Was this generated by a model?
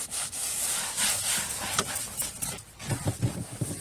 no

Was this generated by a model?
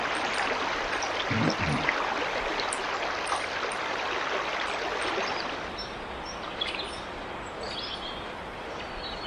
no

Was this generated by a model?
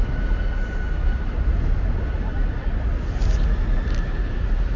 no